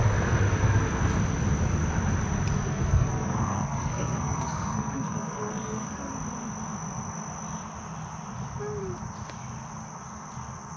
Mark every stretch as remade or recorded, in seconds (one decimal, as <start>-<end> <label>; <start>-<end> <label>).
0.0-2.7 recorded; 2.7-6.1 remade; 6.1-10.8 recorded